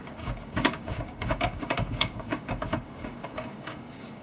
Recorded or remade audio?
remade